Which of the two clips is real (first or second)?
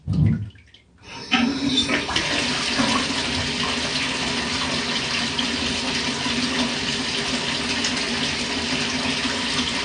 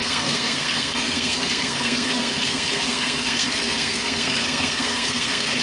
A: first